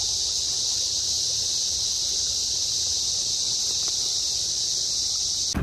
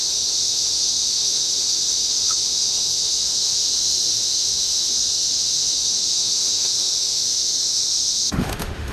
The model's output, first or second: second